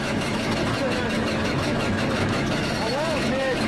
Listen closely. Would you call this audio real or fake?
fake